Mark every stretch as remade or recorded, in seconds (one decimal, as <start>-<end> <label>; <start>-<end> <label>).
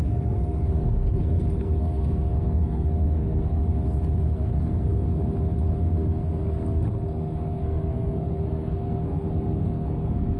0.0-3.6 remade; 3.6-4.2 recorded; 4.2-5.2 remade; 5.2-5.8 recorded; 5.8-10.4 remade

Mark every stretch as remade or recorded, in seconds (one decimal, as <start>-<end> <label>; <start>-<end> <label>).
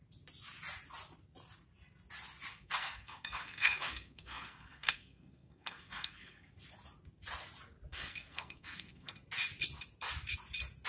0.0-2.5 recorded; 2.5-6.5 remade; 6.5-7.9 recorded; 7.9-9.1 remade; 9.1-10.9 recorded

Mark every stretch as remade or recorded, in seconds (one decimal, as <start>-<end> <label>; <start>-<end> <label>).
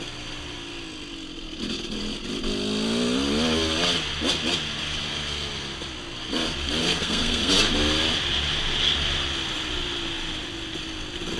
0.0-6.8 recorded; 6.8-7.5 remade; 7.5-11.4 recorded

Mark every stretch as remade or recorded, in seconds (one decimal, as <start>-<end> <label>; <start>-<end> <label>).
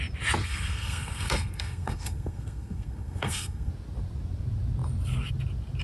0.0-0.4 recorded; 0.4-3.7 remade; 3.7-5.8 recorded